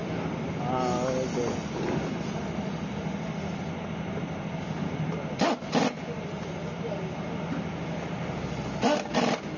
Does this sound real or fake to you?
real